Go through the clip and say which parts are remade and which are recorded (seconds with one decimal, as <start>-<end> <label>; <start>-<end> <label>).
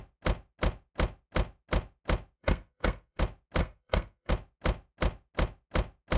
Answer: 0.0-2.4 recorded; 2.4-3.2 remade; 3.2-3.6 recorded; 3.6-4.3 remade; 4.3-6.2 recorded